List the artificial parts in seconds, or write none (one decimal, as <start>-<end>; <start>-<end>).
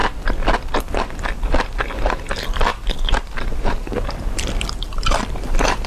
0.9-5.9